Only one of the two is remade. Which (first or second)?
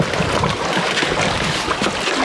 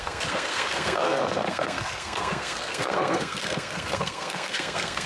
second